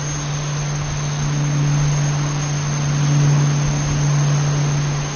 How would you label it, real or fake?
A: real